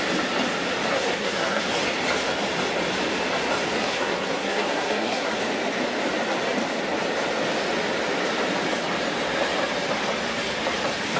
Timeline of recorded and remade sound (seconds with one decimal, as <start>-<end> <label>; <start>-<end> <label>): 0.0-0.9 recorded; 0.9-1.6 remade; 1.6-3.8 recorded; 3.8-5.4 remade; 5.4-11.2 recorded